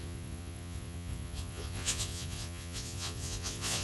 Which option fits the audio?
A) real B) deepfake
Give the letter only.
B